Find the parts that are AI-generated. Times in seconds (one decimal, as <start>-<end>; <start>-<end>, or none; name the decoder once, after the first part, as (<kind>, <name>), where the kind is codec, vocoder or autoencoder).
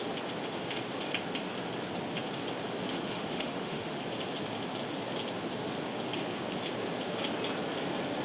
2.9-4.0 (autoencoder, DAC-VAE)